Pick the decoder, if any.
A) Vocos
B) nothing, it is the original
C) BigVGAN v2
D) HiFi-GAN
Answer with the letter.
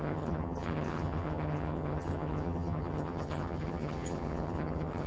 D